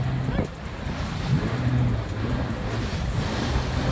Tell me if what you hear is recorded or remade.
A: recorded